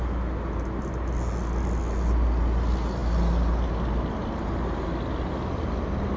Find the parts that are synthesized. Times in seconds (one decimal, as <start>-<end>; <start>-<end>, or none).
none